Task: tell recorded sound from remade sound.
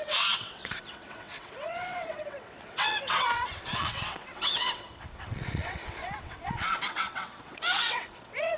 remade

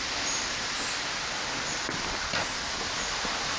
recorded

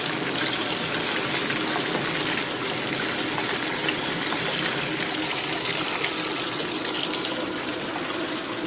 recorded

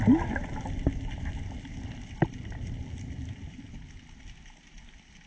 recorded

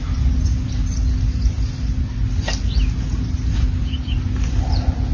recorded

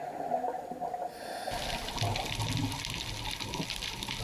recorded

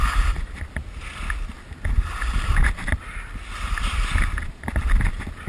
recorded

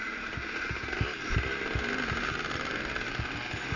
recorded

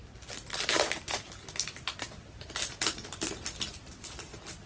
recorded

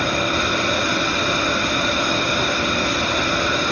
recorded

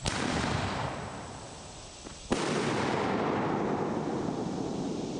recorded